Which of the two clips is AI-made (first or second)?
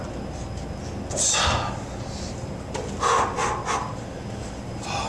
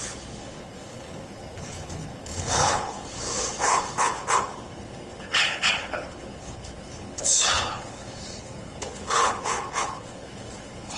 second